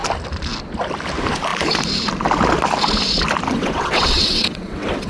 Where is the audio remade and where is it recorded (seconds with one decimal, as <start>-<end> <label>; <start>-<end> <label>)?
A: 0.0-3.5 recorded; 3.5-5.1 remade